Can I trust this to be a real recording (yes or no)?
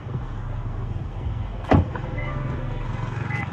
no